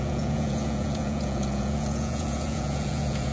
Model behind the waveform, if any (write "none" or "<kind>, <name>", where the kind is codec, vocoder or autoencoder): vocoder, Vocos